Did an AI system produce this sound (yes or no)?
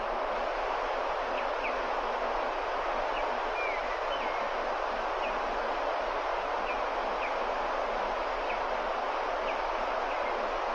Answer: no